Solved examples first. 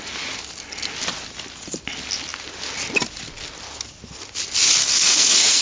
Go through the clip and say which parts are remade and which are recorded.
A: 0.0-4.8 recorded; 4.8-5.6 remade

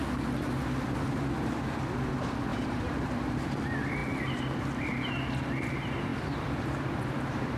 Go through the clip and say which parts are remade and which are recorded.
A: 0.0-2.5 recorded; 2.5-3.6 remade; 3.6-6.1 recorded; 6.1-7.6 remade

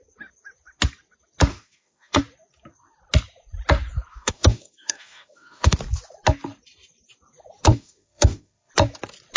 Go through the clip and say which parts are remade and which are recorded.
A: 0.0-1.5 recorded; 1.5-2.2 remade; 2.2-4.1 recorded; 4.1-5.8 remade; 5.8-7.7 recorded; 7.7-8.7 remade; 8.7-9.4 recorded

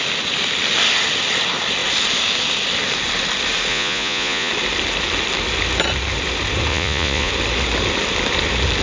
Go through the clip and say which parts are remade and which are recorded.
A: 0.0-3.7 recorded; 3.7-4.5 remade; 4.5-6.7 recorded; 6.7-7.3 remade; 7.3-8.8 recorded

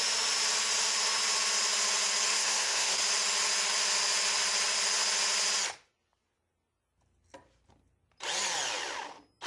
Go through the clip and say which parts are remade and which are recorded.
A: 0.0-2.3 recorded; 2.3-3.0 remade; 3.0-9.5 recorded

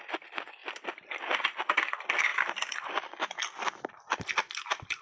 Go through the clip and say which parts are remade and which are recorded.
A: 0.0-0.6 recorded; 0.6-1.2 remade; 1.2-2.3 recorded; 2.3-3.9 remade; 3.9-5.0 recorded